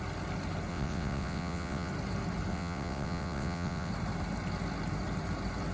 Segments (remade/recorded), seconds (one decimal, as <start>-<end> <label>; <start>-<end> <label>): 0.0-0.7 recorded; 0.7-1.9 remade; 1.9-2.5 recorded; 2.5-3.9 remade; 3.9-5.7 recorded